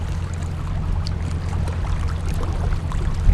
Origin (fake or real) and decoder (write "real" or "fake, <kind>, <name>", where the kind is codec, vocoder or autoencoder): real